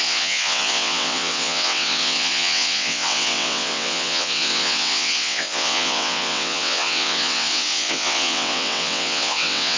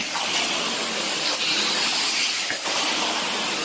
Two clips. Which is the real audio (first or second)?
second